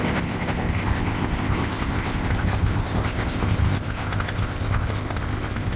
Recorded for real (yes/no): no